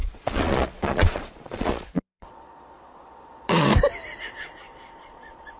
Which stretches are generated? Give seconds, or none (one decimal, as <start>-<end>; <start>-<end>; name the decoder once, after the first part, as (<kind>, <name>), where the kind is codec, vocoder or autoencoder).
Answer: 0.0-3.7 (vocoder, Vocos); 5.0-5.6